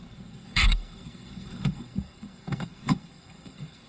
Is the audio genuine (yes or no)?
no